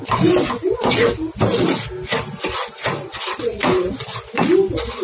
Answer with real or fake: real